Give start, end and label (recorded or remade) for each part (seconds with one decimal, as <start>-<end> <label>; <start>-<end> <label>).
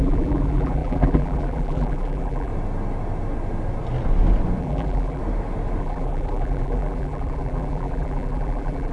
0.0-2.5 remade; 2.5-4.6 recorded; 4.6-5.2 remade; 5.2-5.8 recorded; 5.8-8.9 remade